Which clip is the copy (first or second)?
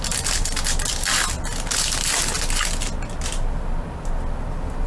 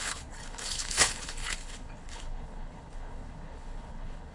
second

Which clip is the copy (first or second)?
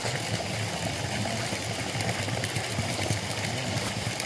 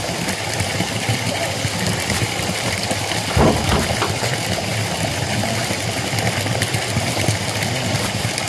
second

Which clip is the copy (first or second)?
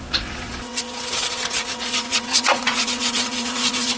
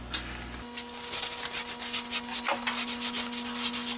first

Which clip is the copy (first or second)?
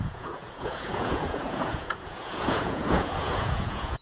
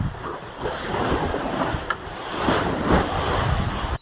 first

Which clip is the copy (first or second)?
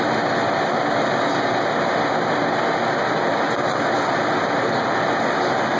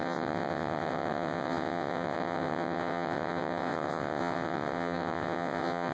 second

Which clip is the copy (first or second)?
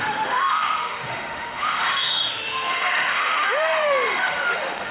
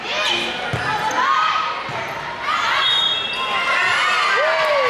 first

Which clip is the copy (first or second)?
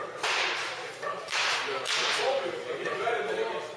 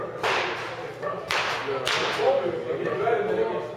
first